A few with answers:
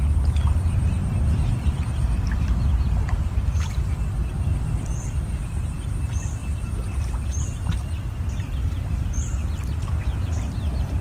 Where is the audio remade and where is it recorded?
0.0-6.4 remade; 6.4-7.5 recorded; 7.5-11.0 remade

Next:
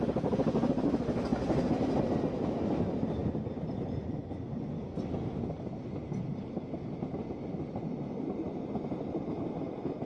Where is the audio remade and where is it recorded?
0.0-10.1 recorded